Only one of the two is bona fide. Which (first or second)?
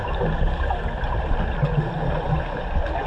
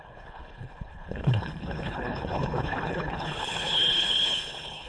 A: first